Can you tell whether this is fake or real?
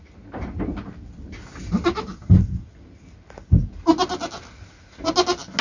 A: real